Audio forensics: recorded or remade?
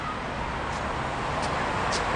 recorded